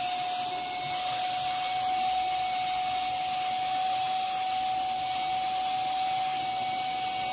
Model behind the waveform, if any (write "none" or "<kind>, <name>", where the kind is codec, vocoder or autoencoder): none